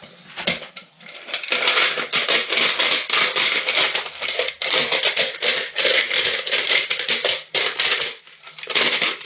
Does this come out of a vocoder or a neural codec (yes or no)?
no